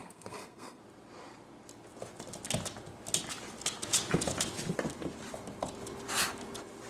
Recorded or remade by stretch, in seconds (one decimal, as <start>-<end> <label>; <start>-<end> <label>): 0.0-0.8 remade; 0.8-6.9 recorded